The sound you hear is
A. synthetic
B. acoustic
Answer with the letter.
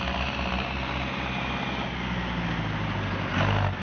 B